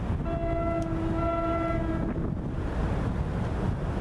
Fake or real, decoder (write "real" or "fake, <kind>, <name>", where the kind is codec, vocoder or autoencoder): real